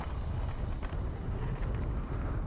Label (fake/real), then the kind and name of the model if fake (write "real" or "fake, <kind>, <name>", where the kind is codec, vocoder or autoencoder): real